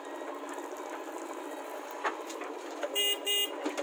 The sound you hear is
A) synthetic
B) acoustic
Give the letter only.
B